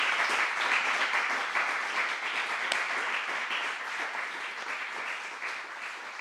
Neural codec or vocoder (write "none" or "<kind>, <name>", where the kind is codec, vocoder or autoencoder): none